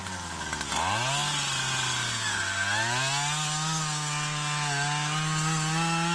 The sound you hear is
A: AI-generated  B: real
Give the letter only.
B